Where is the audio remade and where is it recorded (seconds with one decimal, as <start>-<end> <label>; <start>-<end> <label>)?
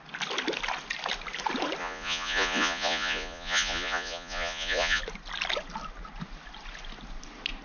0.0-1.8 recorded; 1.8-5.0 remade; 5.0-7.6 recorded